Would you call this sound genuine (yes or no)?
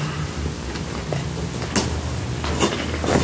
yes